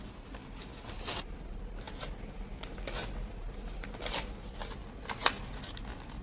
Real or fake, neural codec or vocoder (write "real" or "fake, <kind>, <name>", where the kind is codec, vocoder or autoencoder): real